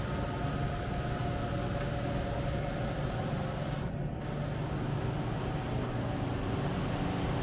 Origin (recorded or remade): recorded